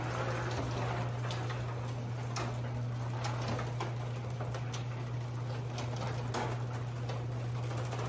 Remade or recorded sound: recorded